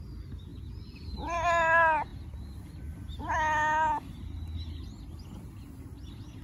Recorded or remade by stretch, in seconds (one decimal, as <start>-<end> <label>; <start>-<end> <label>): 0.0-6.4 recorded